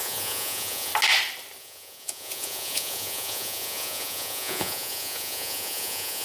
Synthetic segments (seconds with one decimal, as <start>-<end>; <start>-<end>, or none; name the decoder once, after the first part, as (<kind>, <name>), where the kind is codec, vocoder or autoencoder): 0.0-0.9 (vocoder, Vocos); 1.6-6.2

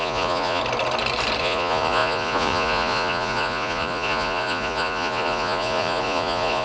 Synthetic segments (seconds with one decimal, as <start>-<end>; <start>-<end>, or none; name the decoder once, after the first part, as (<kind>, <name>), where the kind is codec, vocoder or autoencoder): 0.0-0.6 (vocoder, Vocos); 1.4-6.6

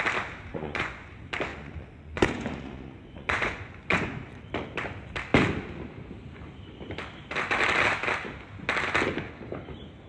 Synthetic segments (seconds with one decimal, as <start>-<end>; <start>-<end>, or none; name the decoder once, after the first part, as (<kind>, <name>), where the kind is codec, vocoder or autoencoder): 0.5-1.1 (vocoder, Vocos); 1.5-4.4

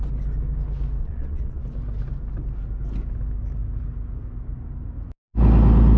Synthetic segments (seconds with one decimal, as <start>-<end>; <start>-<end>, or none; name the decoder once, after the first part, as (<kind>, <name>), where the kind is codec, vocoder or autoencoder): 1.0-1.6 (vocoder, Vocos)

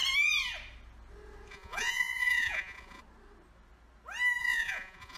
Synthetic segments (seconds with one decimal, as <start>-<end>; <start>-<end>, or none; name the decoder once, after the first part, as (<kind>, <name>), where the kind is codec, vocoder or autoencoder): 1.5-3.0 (vocoder, Vocos); 4.4-5.2